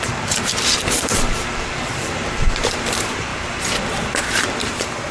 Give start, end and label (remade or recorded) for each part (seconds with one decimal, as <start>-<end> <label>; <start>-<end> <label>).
0.0-3.3 remade; 3.3-4.4 recorded; 4.4-5.1 remade